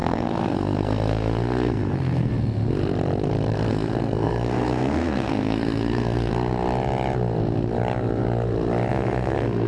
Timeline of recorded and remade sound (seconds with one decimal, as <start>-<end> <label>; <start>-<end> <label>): 0.0-2.3 remade; 2.3-3.7 recorded; 3.7-6.3 remade; 6.3-8.9 recorded; 8.9-9.7 remade

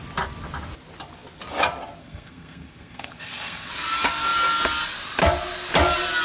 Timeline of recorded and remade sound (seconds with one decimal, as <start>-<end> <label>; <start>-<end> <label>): 0.0-2.0 recorded; 2.0-3.7 remade; 3.7-6.2 recorded

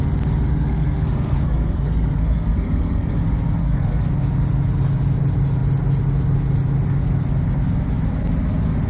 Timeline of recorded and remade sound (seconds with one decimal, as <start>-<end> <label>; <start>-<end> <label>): 0.0-0.5 recorded; 0.5-3.2 remade; 3.2-3.6 recorded; 3.6-4.1 remade; 4.1-8.9 recorded

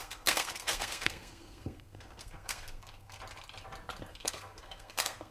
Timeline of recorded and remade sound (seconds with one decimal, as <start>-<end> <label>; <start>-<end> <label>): 0.0-3.2 remade; 3.2-4.1 recorded; 4.1-5.3 remade